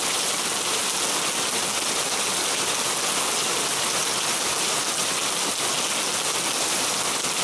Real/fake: real